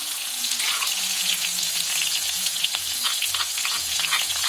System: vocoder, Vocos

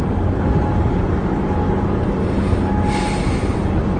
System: none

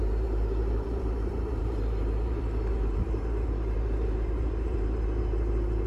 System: vocoder, BigVGAN v2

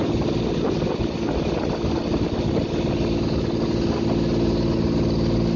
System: none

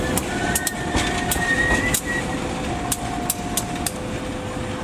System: none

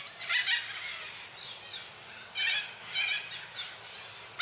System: none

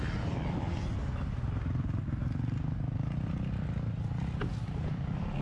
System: none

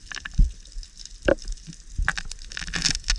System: none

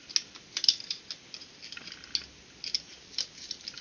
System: none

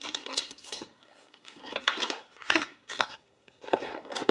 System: codec, SNAC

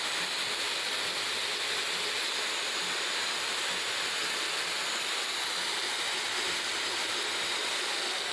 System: none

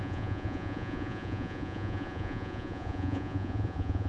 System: vocoder, Vocos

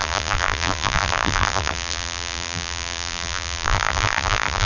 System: vocoder, BigVGAN v2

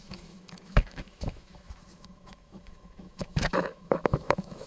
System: autoencoder, DAC-VAE